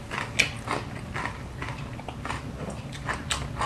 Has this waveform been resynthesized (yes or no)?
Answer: no